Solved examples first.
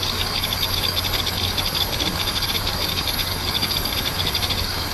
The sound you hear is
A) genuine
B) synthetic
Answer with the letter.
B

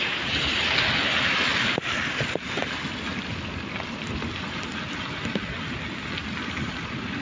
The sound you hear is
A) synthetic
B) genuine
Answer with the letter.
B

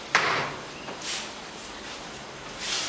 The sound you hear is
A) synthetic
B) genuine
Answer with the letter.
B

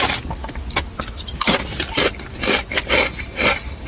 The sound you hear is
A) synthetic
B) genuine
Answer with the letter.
B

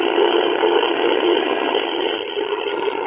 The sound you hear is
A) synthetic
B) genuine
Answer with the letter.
A